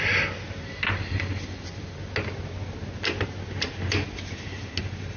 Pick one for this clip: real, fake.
real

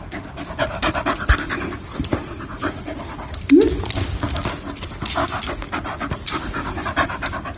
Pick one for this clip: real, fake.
real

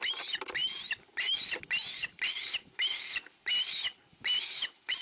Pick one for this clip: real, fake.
real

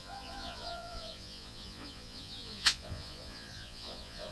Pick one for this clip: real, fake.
fake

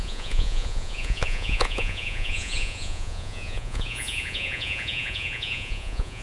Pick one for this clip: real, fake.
fake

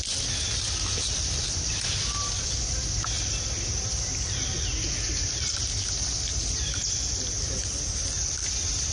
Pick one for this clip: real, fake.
real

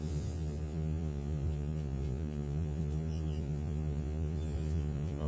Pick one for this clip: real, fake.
fake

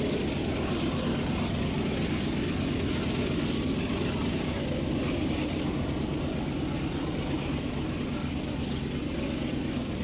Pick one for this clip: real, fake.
real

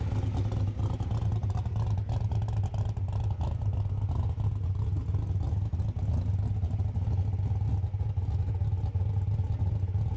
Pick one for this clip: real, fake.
real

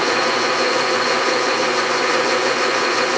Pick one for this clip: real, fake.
fake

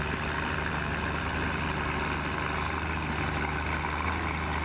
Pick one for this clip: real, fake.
real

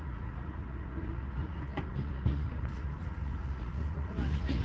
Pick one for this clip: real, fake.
fake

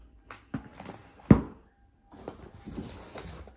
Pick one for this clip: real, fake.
real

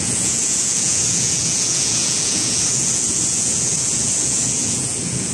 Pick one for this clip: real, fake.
fake